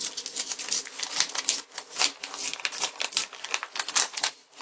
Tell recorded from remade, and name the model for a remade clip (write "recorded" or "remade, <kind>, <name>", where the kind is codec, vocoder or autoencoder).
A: recorded